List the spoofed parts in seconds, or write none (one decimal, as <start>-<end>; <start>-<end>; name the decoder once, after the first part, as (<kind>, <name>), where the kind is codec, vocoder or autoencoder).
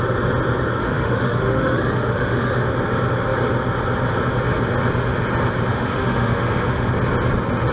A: 0.8-2.7 (autoencoder, DAC-VAE); 5.7-6.9